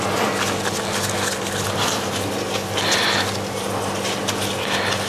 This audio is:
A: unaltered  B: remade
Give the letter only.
A